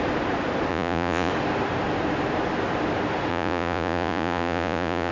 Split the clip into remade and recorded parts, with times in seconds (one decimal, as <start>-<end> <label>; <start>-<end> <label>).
0.0-0.7 recorded; 0.7-1.3 remade; 1.3-3.3 recorded; 3.3-5.1 remade